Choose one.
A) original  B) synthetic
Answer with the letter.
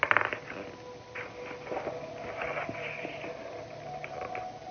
A